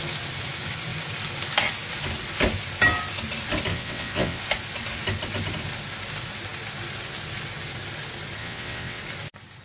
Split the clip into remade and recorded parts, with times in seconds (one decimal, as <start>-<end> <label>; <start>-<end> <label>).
0.0-3.7 recorded; 3.7-4.4 remade; 4.4-8.4 recorded; 8.4-9.0 remade; 9.0-9.6 recorded

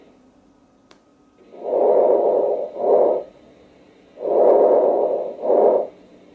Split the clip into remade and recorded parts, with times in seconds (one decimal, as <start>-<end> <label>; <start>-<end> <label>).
0.0-6.3 recorded

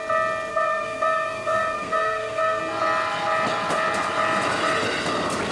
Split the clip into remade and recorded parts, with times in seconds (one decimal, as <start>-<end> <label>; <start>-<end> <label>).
0.0-0.5 recorded; 0.5-2.6 remade; 2.6-5.5 recorded

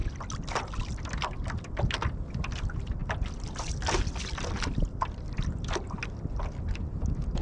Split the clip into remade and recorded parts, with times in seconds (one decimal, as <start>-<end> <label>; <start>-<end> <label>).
0.0-7.4 recorded

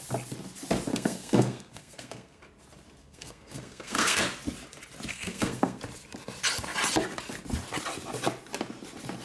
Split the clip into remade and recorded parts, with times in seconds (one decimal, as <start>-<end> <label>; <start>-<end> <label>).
0.0-0.9 recorded; 0.9-2.4 remade; 2.4-3.0 recorded; 3.0-4.2 remade; 4.2-5.1 recorded; 5.1-5.8 remade; 5.8-9.2 recorded

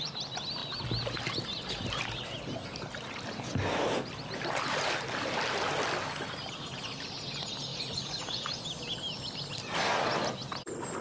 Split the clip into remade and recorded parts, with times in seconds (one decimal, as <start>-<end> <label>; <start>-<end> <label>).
0.0-7.7 recorded; 7.7-8.5 remade; 8.5-11.0 recorded

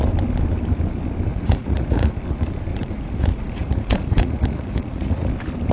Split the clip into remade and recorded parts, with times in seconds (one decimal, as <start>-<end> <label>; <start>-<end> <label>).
0.0-1.3 recorded; 1.3-2.2 remade; 2.2-2.7 recorded; 2.7-5.3 remade; 5.3-5.7 recorded

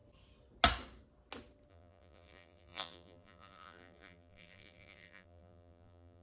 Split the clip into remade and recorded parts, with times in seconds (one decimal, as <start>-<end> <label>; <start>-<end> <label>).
0.0-1.7 recorded; 1.7-6.2 remade